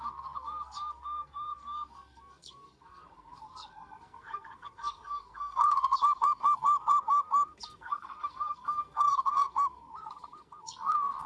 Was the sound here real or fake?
fake